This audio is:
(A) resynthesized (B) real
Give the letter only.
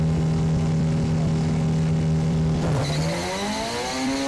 B